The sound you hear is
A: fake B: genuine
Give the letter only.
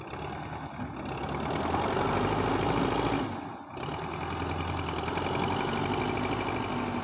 B